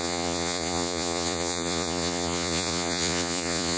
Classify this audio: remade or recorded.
remade